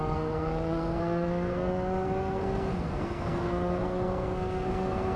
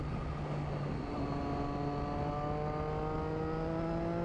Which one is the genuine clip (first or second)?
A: second